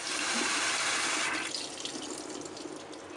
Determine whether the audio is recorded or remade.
recorded